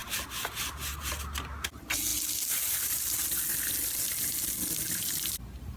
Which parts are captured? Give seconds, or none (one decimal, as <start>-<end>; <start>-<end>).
0.0-5.8